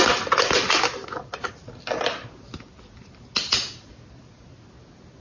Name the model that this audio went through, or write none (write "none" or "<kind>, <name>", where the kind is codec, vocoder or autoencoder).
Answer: none